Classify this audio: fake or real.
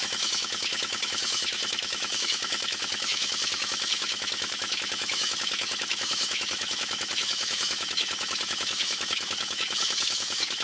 fake